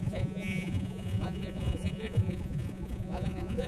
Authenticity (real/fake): fake